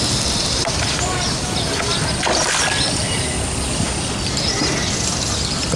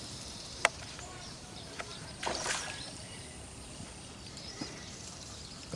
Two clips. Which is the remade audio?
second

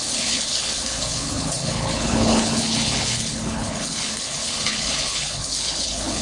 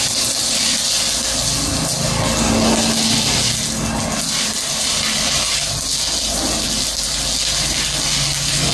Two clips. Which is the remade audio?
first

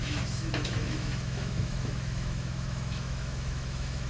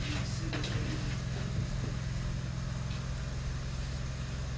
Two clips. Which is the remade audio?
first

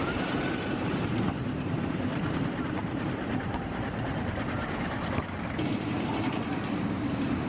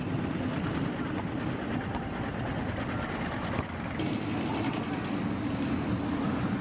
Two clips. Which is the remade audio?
first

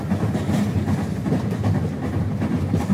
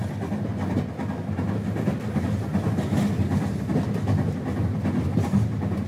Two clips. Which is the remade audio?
first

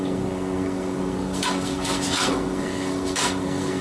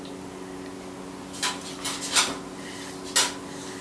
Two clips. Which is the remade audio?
first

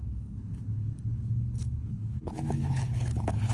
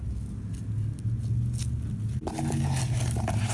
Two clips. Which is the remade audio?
first